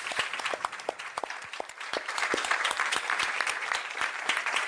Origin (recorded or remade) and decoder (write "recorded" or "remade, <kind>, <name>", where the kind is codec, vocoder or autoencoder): remade, vocoder, BigVGAN v2